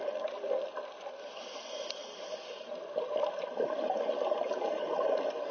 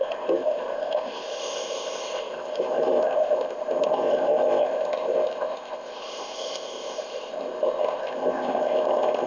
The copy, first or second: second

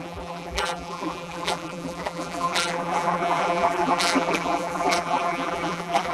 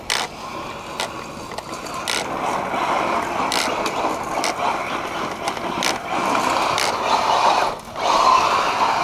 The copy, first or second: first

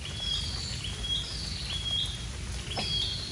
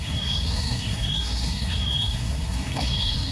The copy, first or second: second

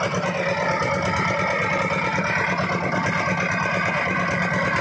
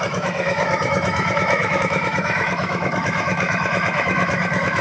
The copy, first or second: second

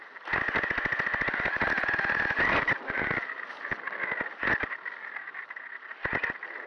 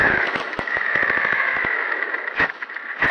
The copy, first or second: second